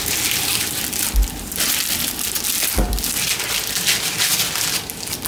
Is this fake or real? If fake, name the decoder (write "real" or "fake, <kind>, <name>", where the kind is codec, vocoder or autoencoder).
real